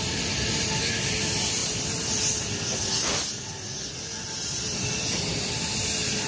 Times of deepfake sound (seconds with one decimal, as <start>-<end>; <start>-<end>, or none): 1.6-5.4